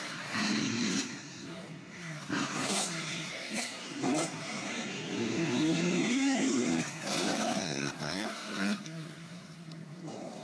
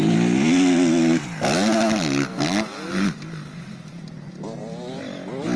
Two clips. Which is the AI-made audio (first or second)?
first